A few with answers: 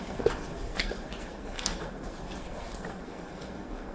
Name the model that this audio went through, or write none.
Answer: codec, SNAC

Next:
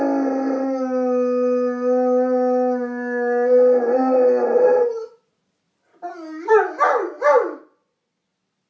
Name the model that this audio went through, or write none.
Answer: none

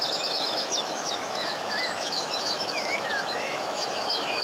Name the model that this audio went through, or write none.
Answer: autoencoder, DAC-VAE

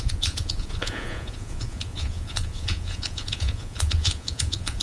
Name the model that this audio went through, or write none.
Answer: vocoder, Vocos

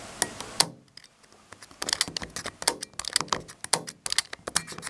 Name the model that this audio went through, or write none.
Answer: none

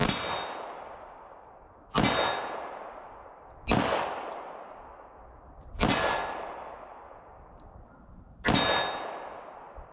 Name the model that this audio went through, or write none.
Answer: none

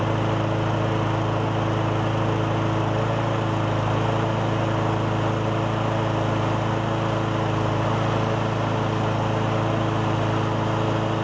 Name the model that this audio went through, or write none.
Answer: none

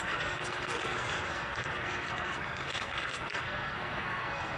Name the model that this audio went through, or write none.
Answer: codec, SNAC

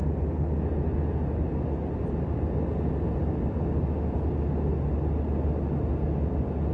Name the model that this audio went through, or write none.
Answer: none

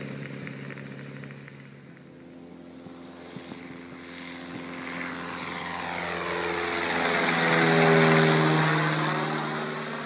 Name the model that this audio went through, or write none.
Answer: none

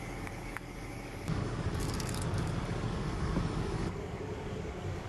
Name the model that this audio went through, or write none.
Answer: codec, DAC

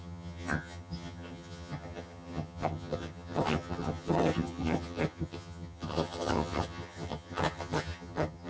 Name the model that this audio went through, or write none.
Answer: vocoder, HiFi-GAN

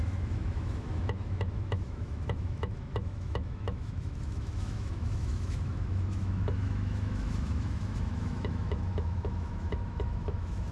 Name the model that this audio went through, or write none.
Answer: autoencoder, DAC-VAE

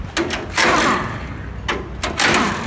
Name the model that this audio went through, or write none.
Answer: none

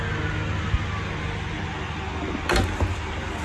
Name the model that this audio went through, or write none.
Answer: none